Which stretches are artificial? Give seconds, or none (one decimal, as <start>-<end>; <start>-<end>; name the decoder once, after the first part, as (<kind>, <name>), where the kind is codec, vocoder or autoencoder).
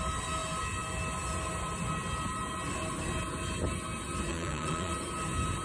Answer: 4.3-4.9 (vocoder, Vocos)